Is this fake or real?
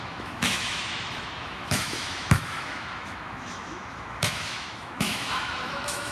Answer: fake